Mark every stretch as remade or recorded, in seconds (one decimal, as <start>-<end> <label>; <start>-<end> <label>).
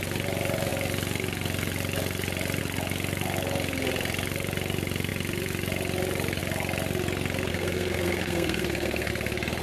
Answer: 0.0-7.5 recorded; 7.5-9.1 remade; 9.1-9.6 recorded